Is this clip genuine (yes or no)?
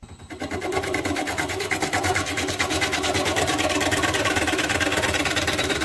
yes